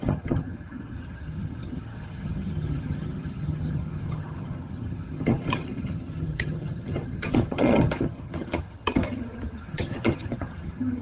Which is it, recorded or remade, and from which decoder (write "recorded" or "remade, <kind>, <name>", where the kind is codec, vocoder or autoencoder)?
remade, vocoder, HiFi-GAN